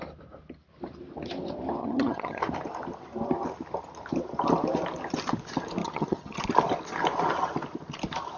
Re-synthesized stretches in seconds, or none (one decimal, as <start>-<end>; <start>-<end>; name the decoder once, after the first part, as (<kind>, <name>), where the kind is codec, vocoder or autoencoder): 1.8-2.4 (vocoder, HiFi-GAN); 5.8-6.4